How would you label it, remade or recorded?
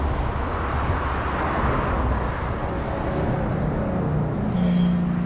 recorded